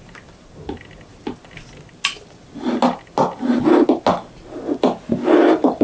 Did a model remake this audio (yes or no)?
no